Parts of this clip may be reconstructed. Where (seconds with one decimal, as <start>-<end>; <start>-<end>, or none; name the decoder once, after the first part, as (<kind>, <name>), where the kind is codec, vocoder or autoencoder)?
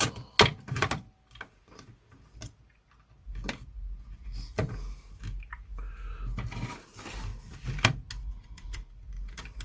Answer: 8.2-8.9 (vocoder, Vocos)